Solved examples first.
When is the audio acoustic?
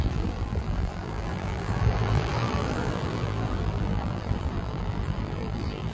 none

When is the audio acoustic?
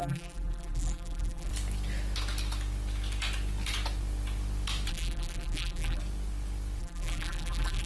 1.5-4.9; 6.0-6.8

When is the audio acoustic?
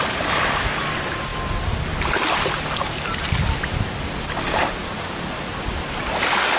0.0-6.6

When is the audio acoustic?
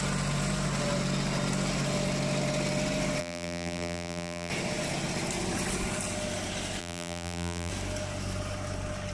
0.0-3.2; 4.5-6.8; 7.7-9.1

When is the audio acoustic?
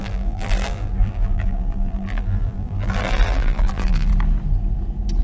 4.1-5.2